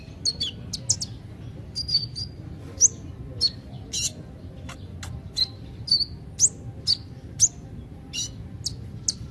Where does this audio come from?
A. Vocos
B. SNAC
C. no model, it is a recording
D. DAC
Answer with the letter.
C